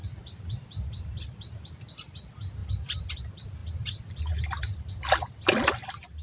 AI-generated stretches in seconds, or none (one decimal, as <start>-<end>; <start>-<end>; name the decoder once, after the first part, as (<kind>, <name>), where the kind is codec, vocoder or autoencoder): none